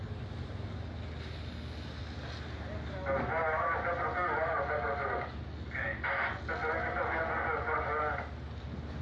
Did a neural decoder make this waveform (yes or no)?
no